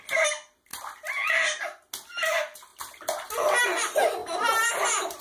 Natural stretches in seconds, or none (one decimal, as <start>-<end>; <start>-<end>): 0.0-5.2